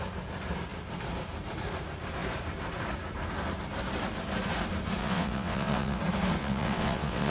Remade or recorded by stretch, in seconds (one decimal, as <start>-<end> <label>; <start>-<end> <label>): 0.0-5.0 recorded; 5.0-6.0 remade; 6.0-6.4 recorded; 6.4-7.3 remade